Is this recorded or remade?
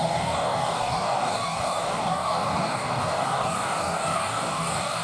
remade